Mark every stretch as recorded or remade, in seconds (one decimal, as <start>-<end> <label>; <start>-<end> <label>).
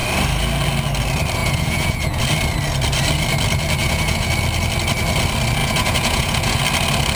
0.0-1.4 recorded; 1.4-2.2 remade; 2.2-3.8 recorded; 3.8-4.3 remade; 4.3-5.6 recorded; 5.6-6.6 remade; 6.6-7.1 recorded